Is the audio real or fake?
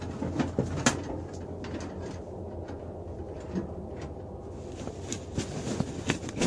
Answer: real